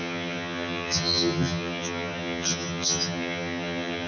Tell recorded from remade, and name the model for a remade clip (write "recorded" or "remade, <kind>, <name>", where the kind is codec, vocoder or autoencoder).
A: remade, vocoder, HiFi-GAN